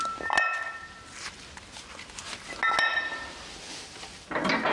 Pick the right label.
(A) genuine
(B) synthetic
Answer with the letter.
A